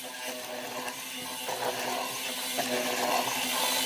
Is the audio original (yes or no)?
yes